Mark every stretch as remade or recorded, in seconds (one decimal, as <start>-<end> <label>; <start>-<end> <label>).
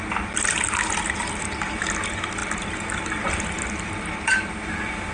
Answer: 0.0-5.1 recorded